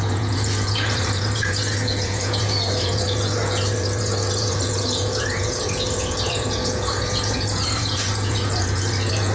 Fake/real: fake